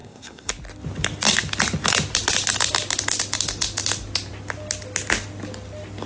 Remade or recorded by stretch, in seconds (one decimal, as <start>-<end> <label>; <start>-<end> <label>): 0.0-0.5 remade; 0.5-6.1 recorded